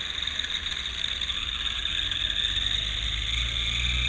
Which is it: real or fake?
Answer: real